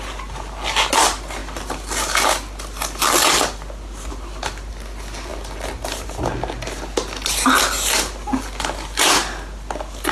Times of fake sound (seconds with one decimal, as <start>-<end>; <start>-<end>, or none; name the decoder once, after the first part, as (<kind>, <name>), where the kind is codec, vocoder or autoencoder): none